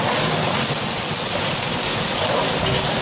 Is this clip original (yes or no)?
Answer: yes